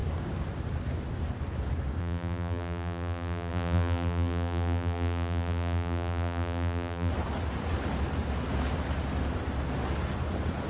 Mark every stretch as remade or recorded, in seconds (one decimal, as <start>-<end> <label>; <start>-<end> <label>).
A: 0.0-2.0 recorded; 2.0-7.1 remade; 7.1-10.7 recorded